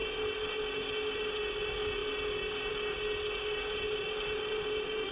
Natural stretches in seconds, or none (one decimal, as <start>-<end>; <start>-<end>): 0.0-5.1